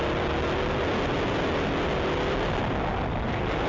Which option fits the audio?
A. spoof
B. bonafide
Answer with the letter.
B